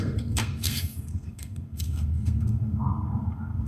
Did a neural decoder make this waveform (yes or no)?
yes